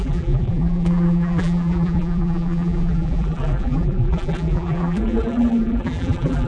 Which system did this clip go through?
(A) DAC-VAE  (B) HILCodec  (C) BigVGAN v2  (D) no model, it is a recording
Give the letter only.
C